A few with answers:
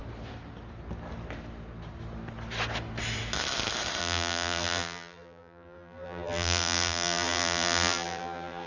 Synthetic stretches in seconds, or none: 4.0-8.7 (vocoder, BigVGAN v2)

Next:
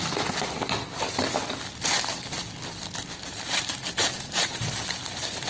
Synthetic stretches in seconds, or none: 4.0-4.6 (vocoder, BigVGAN v2)

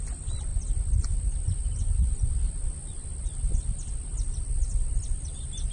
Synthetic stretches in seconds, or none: none

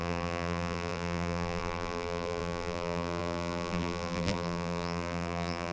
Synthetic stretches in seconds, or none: 0.0-5.7 (vocoder, BigVGAN v2)